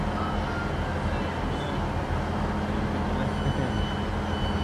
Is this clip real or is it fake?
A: real